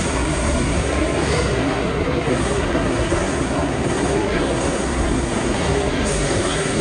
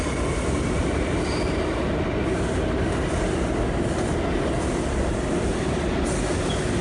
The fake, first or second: first